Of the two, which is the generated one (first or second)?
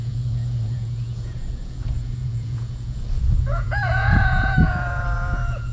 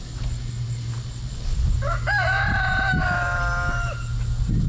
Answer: first